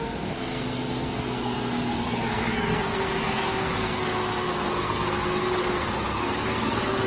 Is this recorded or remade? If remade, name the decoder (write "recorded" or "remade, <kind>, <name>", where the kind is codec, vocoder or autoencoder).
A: remade, codec, SNAC